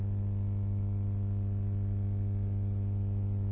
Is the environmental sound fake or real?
real